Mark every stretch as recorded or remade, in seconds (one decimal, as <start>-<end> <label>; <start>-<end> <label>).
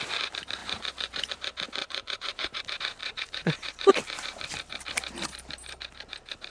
0.0-0.6 recorded; 0.6-1.3 remade; 1.3-1.8 recorded; 1.8-2.6 remade; 2.6-3.0 recorded; 3.0-3.9 remade; 3.9-6.5 recorded